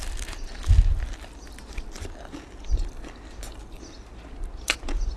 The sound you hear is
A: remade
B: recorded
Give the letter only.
B